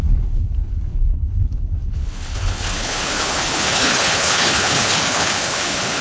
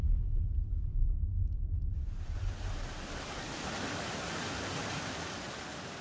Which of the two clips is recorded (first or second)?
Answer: second